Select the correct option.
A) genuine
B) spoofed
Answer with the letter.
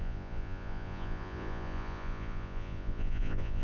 B